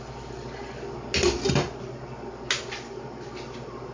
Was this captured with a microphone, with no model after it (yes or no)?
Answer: yes